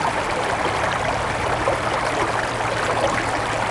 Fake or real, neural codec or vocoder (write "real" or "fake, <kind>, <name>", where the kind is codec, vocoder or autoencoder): real